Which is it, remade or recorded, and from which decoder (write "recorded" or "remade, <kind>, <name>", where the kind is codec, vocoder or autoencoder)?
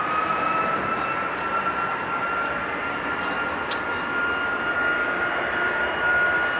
recorded